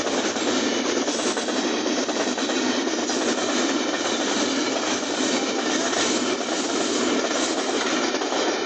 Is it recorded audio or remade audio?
recorded